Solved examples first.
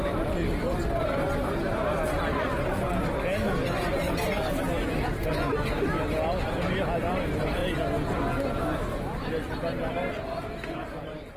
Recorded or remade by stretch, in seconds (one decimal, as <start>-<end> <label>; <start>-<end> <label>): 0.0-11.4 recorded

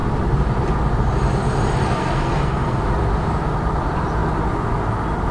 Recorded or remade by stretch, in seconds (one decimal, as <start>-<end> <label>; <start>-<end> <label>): 0.0-1.8 recorded; 1.8-2.8 remade; 2.8-5.3 recorded

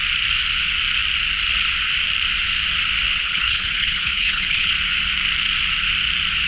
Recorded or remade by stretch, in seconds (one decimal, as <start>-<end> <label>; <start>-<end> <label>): 0.0-3.2 recorded; 3.2-4.7 remade; 4.7-6.5 recorded

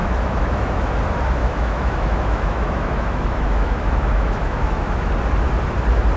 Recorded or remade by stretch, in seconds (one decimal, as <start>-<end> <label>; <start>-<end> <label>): 0.0-0.9 remade; 0.9-1.4 recorded; 1.4-5.1 remade; 5.1-6.2 recorded